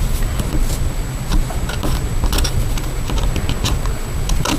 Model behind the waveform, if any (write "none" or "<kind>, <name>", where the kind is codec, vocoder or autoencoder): none